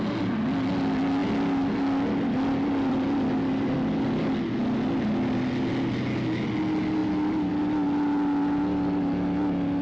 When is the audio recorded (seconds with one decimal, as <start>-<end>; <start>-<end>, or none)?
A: 0.0-9.8